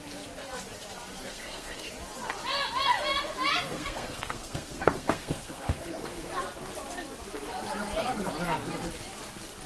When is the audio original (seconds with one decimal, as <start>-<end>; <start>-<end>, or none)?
0.0-1.3; 1.9-3.7; 6.3-9.7